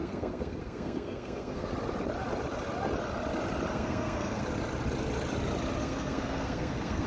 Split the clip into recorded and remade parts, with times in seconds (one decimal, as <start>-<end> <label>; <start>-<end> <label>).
0.0-1.7 remade; 1.7-3.7 recorded; 3.7-4.4 remade; 4.4-5.8 recorded; 5.8-7.1 remade